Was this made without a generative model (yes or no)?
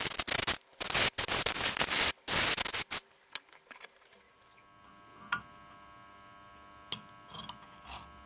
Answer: yes